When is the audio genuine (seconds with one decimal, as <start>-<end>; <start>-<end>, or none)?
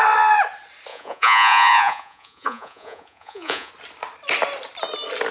0.0-0.9; 3.7-5.3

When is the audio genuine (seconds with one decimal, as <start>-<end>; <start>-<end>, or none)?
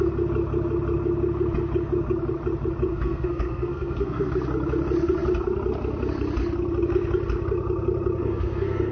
0.0-2.9; 4.3-8.2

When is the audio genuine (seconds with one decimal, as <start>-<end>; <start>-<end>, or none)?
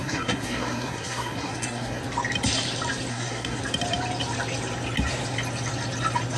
2.0-3.1; 3.6-6.4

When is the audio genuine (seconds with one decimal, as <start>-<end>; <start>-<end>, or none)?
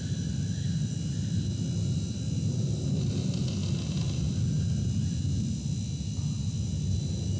0.0-7.4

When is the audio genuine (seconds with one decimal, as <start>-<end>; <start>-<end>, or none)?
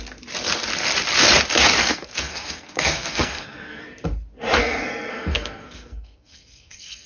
0.0-1.8; 3.8-4.6